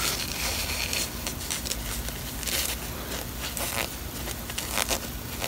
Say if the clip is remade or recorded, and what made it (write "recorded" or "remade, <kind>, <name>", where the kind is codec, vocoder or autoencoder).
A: recorded